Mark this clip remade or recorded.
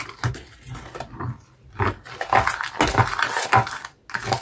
recorded